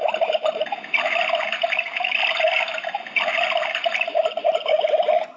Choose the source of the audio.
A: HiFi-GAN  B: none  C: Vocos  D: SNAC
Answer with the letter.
B